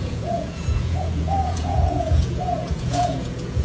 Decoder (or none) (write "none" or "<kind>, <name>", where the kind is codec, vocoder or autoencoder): vocoder, Vocos